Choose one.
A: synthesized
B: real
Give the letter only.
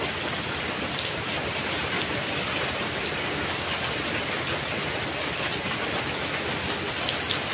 B